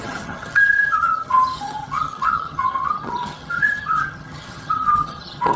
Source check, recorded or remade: remade